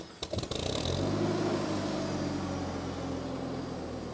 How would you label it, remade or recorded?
recorded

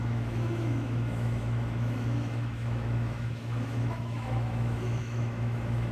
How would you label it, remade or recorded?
remade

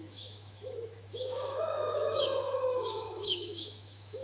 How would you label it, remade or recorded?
remade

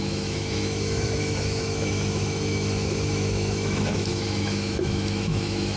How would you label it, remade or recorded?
remade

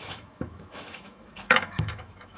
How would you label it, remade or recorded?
remade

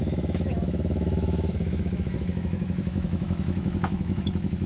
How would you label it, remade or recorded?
remade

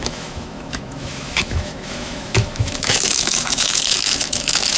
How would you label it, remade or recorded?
remade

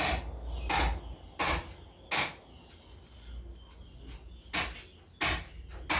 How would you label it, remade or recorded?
recorded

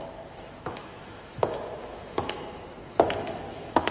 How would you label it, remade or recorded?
remade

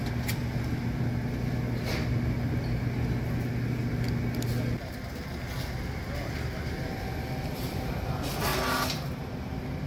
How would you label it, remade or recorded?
recorded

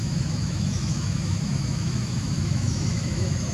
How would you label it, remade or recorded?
remade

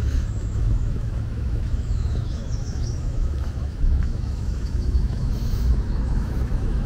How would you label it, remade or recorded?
remade